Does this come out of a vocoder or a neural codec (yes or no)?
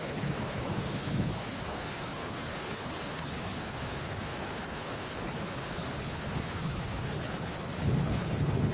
yes